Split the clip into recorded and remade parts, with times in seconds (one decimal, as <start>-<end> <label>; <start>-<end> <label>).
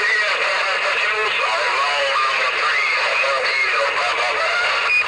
0.0-5.1 remade